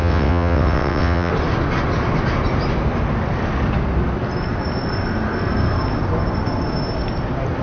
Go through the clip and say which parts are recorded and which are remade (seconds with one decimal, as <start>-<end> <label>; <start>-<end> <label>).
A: 0.0-1.3 remade; 1.3-7.6 recorded